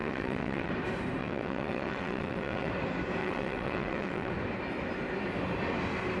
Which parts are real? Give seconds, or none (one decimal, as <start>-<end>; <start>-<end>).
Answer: 0.7-1.2; 2.7-3.2; 4.3-6.2